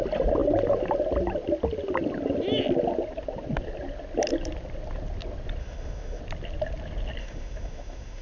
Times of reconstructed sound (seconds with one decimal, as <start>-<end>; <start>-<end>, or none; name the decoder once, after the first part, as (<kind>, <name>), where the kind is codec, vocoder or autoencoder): 5.6-6.2 (autoencoder, DAC-VAE); 7.2-8.2